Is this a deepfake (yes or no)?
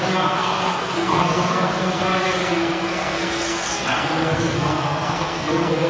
yes